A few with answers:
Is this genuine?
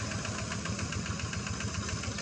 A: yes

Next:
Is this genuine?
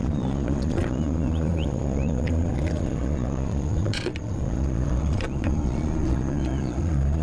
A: no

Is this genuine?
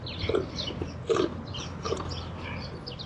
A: yes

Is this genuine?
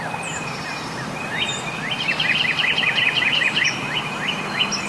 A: yes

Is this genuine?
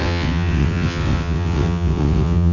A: no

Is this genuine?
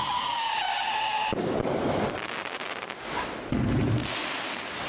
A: yes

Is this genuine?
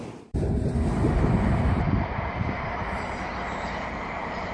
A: no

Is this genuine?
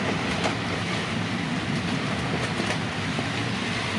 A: yes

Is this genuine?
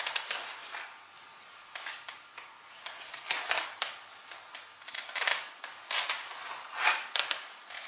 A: yes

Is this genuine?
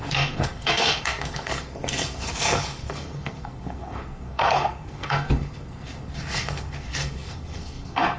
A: no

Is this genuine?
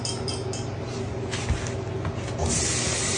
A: yes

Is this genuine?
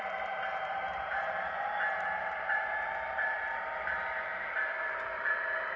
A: no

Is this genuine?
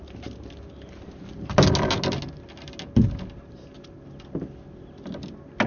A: yes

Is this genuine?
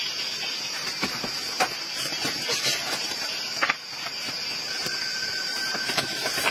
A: no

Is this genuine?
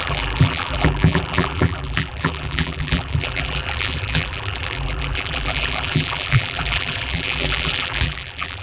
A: no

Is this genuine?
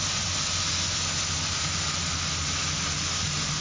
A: yes